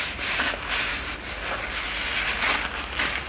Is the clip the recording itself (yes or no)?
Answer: yes